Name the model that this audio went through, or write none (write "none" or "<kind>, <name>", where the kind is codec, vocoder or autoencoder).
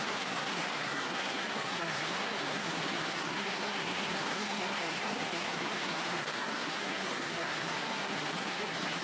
codec, SNAC